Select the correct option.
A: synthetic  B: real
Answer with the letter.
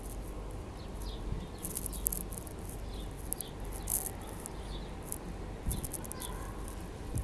B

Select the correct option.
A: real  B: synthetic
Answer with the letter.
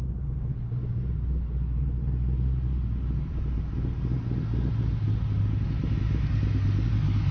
A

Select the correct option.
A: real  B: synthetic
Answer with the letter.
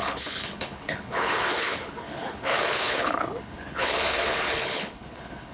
B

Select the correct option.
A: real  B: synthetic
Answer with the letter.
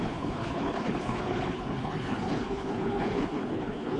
B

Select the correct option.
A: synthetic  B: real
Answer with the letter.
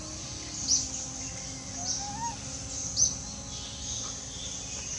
B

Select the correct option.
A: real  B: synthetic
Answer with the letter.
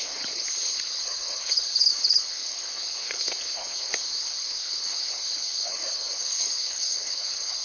B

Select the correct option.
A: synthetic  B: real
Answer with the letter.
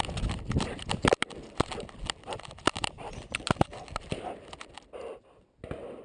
B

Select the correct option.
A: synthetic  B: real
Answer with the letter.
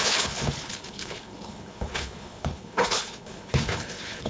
A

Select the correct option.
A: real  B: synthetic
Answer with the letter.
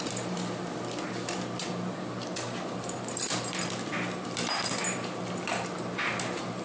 A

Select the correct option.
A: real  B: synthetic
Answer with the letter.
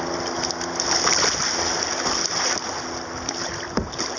A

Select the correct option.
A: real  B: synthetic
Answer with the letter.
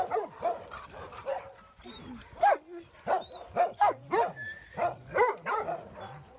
A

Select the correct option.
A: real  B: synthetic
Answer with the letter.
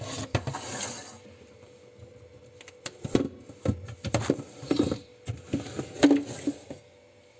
A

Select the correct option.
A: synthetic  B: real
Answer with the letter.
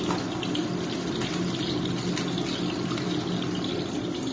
B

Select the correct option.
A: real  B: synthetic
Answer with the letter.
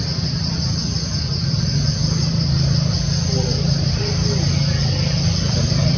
A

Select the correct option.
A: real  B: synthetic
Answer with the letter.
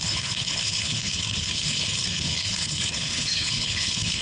B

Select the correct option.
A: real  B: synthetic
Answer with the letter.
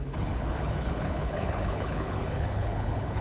B